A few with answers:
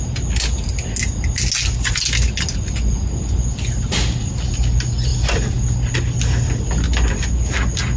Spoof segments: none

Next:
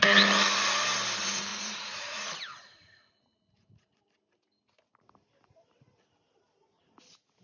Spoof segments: 1.5-4.0 (vocoder, Vocos)

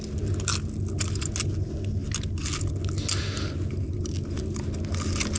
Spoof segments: none

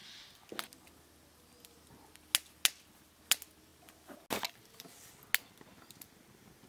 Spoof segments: none